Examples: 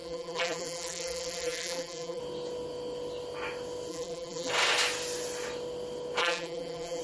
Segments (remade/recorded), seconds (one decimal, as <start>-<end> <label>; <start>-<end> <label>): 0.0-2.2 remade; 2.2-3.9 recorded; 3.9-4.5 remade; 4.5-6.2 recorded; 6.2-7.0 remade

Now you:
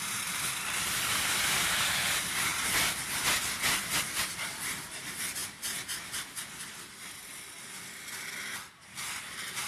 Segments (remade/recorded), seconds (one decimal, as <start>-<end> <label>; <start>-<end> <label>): 0.0-9.7 recorded

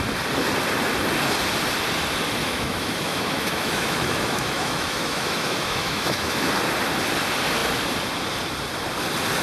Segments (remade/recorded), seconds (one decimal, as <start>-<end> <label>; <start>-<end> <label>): 0.0-2.4 recorded; 2.4-6.5 remade; 6.5-9.4 recorded

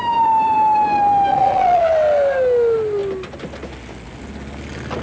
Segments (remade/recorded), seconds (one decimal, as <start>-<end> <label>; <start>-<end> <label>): 0.0-1.3 recorded; 1.3-1.8 remade; 1.8-5.0 recorded

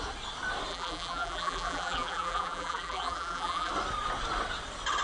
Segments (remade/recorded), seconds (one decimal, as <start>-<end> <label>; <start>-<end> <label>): 0.0-0.7 recorded; 0.7-3.7 remade; 3.7-5.0 recorded

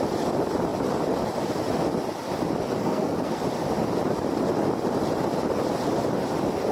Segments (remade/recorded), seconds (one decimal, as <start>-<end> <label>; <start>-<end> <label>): 0.0-2.8 recorded; 2.8-3.4 remade; 3.4-6.7 recorded